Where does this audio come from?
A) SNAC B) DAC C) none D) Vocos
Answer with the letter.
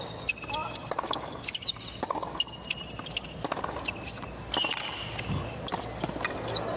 C